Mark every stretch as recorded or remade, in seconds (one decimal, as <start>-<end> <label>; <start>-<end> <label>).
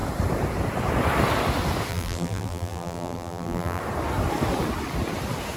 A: 0.0-1.9 recorded; 1.9-3.8 remade; 3.8-5.6 recorded